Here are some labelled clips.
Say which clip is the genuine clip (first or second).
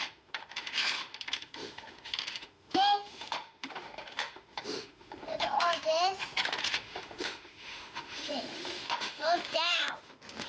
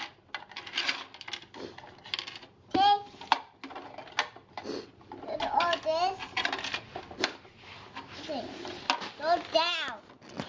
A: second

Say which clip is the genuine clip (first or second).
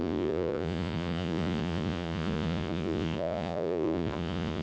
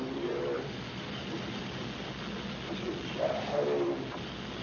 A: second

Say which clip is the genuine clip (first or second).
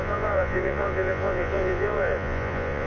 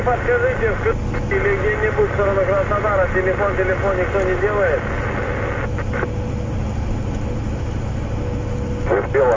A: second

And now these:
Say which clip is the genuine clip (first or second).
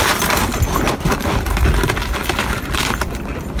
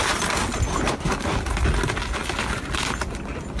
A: second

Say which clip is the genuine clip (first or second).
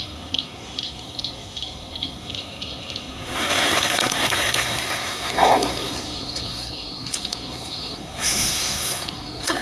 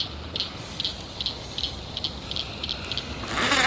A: second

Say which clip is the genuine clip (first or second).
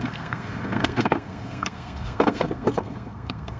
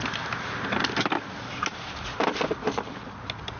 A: second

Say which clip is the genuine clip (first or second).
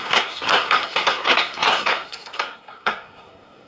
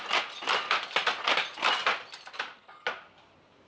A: second